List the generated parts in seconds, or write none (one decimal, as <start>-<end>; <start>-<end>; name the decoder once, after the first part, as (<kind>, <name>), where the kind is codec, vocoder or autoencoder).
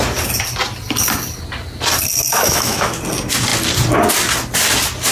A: 2.3-3.0 (autoencoder, DAC-VAE)